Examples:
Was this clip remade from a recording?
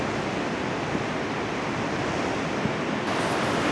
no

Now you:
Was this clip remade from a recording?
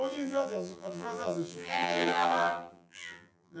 yes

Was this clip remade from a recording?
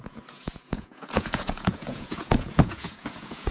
yes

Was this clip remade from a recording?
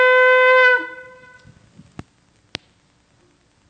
no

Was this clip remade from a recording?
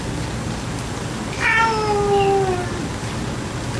no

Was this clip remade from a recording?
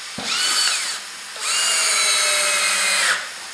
no